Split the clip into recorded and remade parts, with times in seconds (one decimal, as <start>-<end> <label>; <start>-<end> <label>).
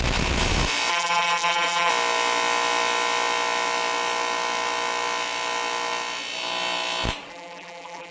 0.0-0.9 recorded; 0.9-1.9 remade; 1.9-7.3 recorded; 7.3-8.1 remade